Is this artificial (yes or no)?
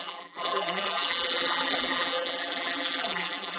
yes